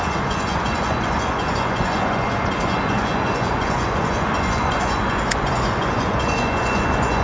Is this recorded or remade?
remade